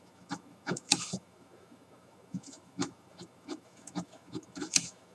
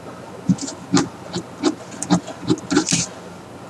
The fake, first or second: first